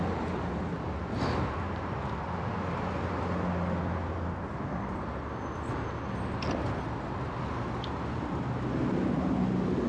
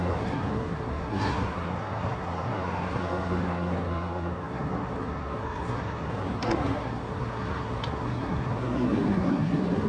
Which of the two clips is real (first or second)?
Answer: first